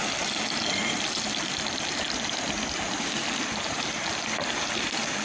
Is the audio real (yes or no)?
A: yes